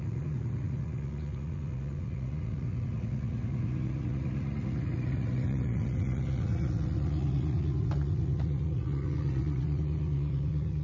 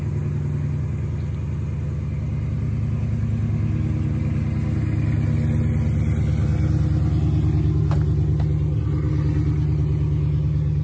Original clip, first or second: second